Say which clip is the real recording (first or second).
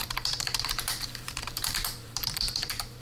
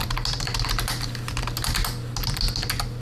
second